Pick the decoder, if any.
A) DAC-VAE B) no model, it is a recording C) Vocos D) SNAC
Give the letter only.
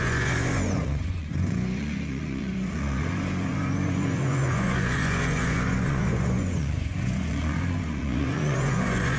C